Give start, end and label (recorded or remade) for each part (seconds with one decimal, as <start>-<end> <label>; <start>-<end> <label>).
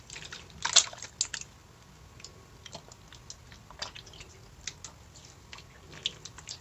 0.0-6.6 recorded